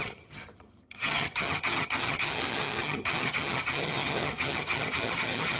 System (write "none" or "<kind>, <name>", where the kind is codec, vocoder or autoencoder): vocoder, HiFi-GAN